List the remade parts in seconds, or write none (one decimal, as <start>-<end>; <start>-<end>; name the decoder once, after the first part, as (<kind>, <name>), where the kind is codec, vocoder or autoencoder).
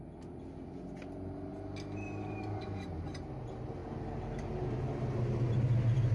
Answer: none